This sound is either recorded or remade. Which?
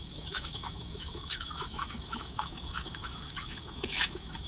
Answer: remade